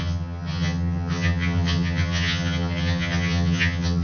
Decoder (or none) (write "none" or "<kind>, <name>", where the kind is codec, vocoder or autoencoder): vocoder, HiFi-GAN